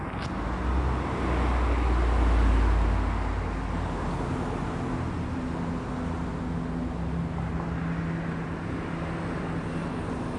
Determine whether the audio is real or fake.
real